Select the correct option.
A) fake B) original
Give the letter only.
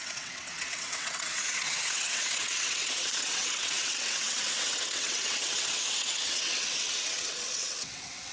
A